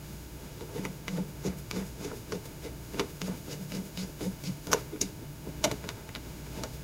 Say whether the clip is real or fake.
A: fake